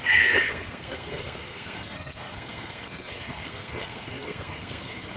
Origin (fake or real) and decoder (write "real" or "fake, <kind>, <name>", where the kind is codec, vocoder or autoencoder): fake, codec, SNAC